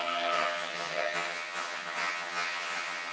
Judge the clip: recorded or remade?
remade